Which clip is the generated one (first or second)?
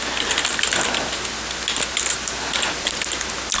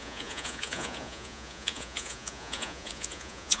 second